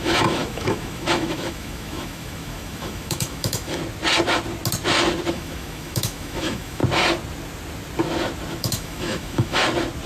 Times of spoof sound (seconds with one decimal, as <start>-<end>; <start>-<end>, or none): 0.0-3.8; 5.3-6.8; 8.6-9.6